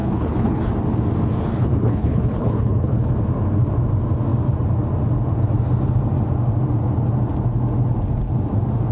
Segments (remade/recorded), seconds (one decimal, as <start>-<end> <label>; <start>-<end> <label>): 0.0-0.7 remade; 0.7-1.5 recorded; 1.5-3.1 remade; 3.1-8.9 recorded